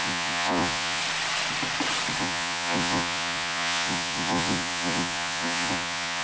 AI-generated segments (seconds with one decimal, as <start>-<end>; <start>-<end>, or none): 0.0-1.0; 2.2-6.2